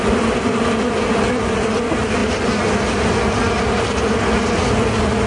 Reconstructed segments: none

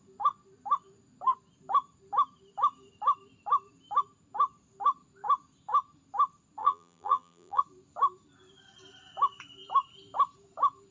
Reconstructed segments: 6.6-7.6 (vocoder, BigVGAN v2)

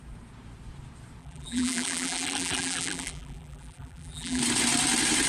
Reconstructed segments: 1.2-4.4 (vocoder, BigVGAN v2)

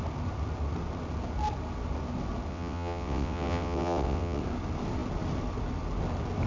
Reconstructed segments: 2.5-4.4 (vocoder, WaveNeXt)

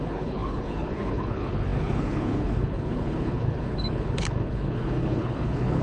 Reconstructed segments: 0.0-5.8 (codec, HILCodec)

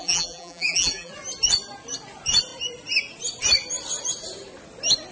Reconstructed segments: 0.0-1.1 (vocoder, BigVGAN v2)